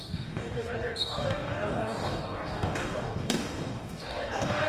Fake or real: fake